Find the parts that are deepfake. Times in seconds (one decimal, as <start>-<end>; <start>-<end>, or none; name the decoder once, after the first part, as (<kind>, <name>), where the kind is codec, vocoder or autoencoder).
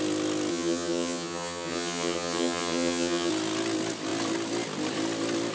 0.5-3.3 (vocoder, HiFi-GAN)